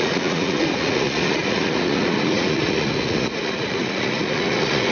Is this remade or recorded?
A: remade